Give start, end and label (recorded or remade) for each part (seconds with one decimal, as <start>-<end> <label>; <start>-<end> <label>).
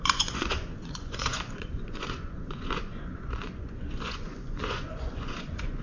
0.0-5.8 remade